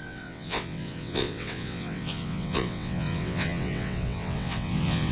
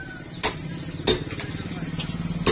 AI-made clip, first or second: first